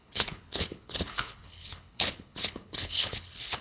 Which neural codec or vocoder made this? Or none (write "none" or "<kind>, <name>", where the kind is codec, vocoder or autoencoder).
codec, HILCodec